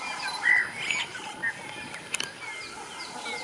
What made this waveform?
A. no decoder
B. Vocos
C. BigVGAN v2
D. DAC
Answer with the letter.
A